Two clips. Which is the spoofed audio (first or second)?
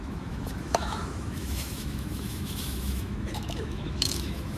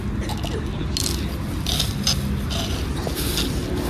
first